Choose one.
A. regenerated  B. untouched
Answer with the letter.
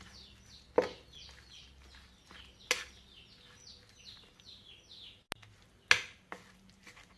B